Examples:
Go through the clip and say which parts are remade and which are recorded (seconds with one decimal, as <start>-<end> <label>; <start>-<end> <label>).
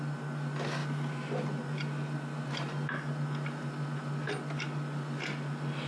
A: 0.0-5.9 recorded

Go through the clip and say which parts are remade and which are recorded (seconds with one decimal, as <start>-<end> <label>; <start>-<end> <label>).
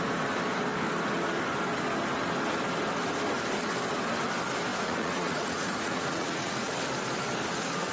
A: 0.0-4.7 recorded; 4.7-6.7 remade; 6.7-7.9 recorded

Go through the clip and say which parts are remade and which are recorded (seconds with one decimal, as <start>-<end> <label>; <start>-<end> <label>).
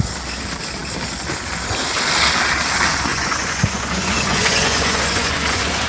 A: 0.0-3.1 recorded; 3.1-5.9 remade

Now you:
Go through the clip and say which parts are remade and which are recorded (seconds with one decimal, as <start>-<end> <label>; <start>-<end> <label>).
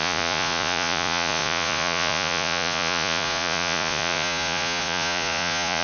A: 0.0-5.8 remade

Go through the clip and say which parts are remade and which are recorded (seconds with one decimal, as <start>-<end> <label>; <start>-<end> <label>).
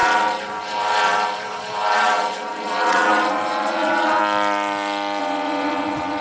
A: 0.0-4.2 remade; 4.2-5.2 recorded; 5.2-6.2 remade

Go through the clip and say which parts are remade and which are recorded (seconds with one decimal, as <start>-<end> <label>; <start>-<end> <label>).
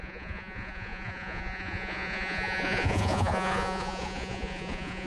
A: 0.0-5.1 remade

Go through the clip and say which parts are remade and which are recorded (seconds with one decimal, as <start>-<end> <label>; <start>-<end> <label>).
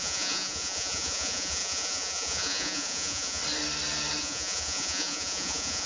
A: 0.0-3.4 remade; 3.4-4.2 recorded; 4.2-5.9 remade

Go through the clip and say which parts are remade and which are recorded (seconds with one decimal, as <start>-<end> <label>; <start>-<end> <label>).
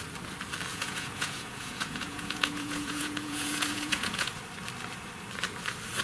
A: 0.0-0.7 recorded; 0.7-4.3 remade; 4.3-6.0 recorded